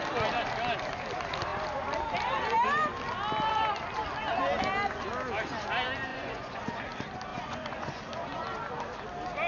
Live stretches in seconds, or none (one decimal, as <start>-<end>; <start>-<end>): 0.0-6.1; 6.8-7.3; 8.0-9.5